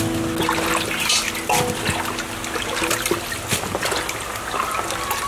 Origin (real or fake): real